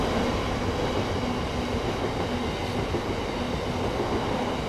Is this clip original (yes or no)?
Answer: yes